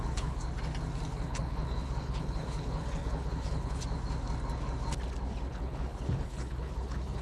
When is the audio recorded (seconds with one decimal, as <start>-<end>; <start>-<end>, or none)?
0.4-1.1; 3.8-5.5